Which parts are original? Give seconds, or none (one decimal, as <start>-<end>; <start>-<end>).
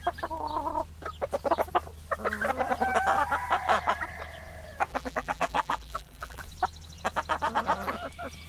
0.0-4.9; 6.4-8.5